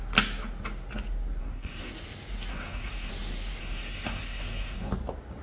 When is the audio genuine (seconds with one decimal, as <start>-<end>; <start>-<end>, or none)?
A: 0.0-1.4; 1.9-2.5; 3.1-3.6; 4.9-5.4